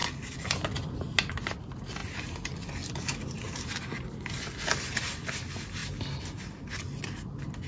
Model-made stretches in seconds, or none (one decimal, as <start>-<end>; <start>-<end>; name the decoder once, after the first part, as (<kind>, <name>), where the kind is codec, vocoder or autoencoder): none